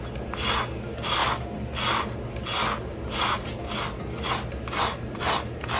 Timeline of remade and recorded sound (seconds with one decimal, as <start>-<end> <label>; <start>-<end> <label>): 0.0-5.8 recorded